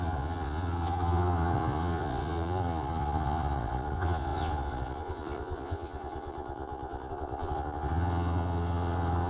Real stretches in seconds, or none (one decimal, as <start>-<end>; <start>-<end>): none